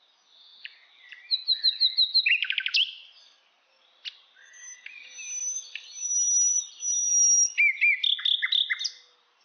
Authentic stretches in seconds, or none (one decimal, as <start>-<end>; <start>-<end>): 0.0-9.4